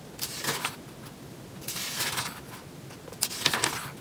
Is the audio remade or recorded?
recorded